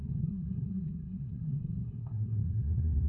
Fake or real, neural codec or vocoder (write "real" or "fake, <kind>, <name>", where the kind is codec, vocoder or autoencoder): fake, codec, SNAC